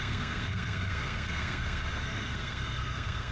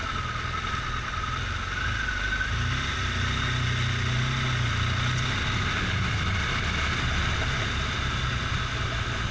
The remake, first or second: first